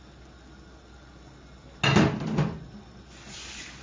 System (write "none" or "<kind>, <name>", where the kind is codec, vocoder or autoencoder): none